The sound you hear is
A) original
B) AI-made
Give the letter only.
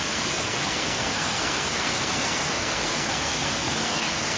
B